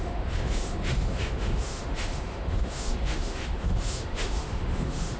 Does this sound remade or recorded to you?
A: remade